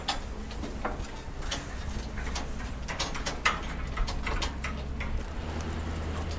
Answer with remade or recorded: recorded